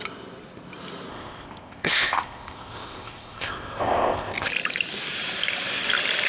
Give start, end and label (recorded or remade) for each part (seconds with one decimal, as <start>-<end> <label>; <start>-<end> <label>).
0.0-1.1 recorded; 1.1-4.5 remade; 4.5-6.3 recorded